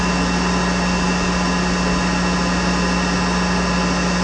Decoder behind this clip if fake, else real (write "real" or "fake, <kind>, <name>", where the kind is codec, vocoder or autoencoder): real